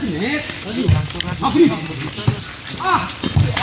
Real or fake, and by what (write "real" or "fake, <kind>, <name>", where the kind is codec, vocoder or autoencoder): real